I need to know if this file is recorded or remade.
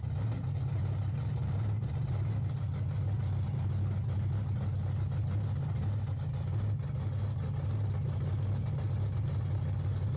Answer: recorded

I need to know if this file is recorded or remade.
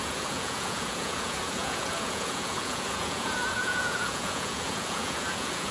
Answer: remade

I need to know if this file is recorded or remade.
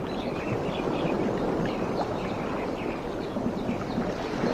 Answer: recorded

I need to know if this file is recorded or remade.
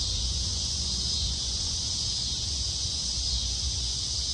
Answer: remade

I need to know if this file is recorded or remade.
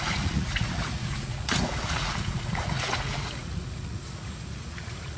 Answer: remade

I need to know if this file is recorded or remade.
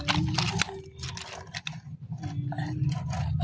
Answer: recorded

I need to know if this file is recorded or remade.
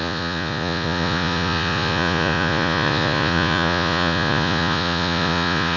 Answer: remade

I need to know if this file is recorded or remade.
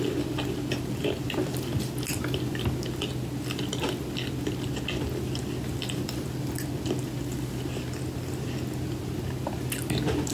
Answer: recorded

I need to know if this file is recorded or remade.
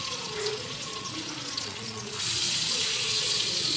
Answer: remade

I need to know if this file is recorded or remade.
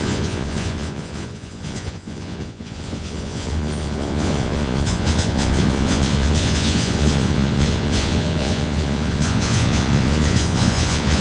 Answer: remade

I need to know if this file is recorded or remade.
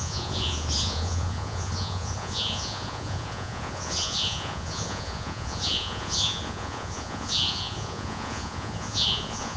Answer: remade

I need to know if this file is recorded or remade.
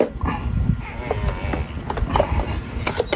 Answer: recorded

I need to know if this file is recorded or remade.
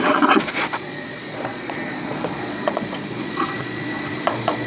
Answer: remade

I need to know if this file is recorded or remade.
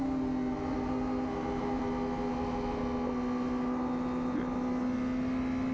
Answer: recorded